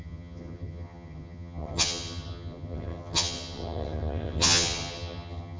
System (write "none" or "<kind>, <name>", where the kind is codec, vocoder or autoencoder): vocoder, HiFi-GAN